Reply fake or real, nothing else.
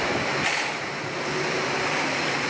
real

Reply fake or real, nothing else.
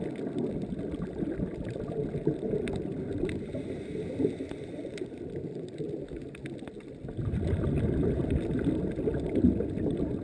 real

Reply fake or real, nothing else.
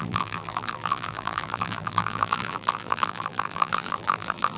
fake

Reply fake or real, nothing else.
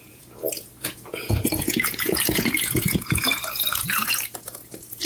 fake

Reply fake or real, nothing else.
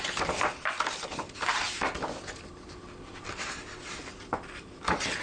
real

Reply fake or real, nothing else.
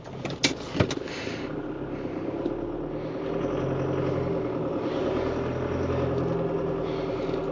real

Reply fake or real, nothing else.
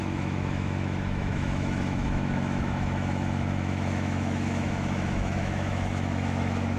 fake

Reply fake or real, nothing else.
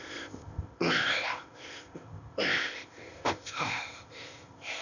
fake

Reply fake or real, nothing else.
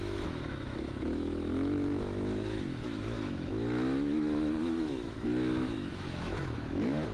fake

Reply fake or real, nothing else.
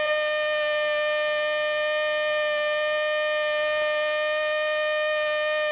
real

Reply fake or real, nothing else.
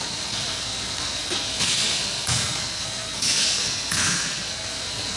fake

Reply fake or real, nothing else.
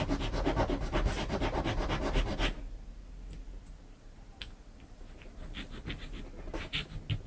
real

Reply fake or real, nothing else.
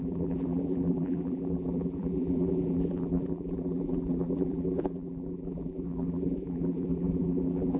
fake